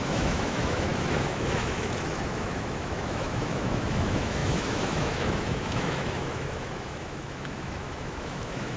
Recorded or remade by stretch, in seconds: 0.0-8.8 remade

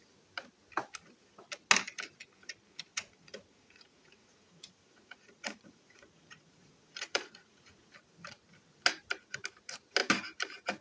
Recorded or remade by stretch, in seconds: 0.0-2.9 recorded; 2.9-7.9 remade; 7.9-10.8 recorded

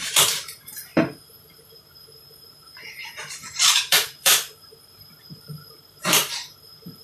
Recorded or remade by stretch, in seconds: 0.0-7.0 remade

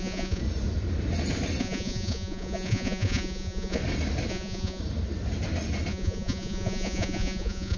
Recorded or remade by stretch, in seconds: 0.0-0.4 remade; 0.4-1.6 recorded; 1.6-3.8 remade; 3.8-4.3 recorded; 4.3-4.8 remade; 4.8-5.9 recorded; 5.9-7.8 remade

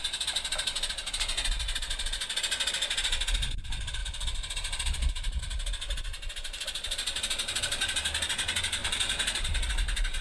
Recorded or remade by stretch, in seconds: 0.0-4.0 recorded; 4.0-5.4 remade; 5.4-8.8 recorded; 8.8-9.7 remade; 9.7-10.2 recorded